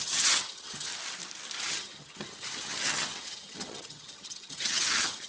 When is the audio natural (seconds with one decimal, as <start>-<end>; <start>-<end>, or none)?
0.9-1.7